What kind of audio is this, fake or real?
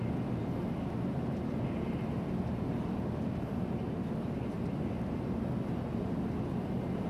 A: real